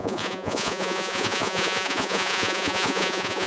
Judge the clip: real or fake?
fake